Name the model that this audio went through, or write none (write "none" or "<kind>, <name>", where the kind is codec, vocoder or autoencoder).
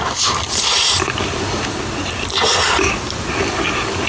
none